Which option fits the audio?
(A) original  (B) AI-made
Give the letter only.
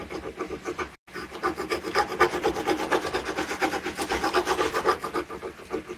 A